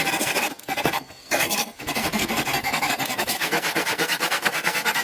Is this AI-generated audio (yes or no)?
yes